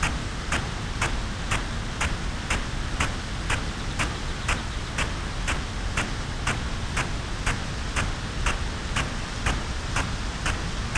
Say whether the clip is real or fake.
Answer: real